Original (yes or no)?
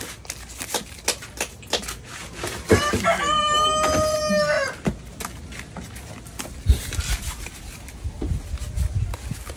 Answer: yes